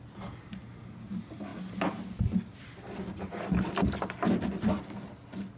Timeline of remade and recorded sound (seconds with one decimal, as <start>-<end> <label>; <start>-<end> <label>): 0.0-5.6 recorded